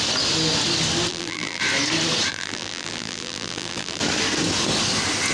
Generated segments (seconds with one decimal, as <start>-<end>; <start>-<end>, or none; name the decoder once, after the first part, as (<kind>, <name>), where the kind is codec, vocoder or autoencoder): 1.1-1.6 (vocoder, BigVGAN v2); 2.3-4.0